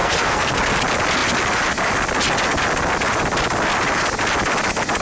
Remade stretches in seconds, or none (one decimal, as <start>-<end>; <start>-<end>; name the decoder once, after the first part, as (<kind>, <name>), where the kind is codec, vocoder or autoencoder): 0.0-0.6 (codec, SNAC)